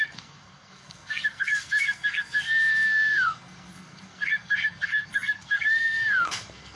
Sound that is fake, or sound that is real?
fake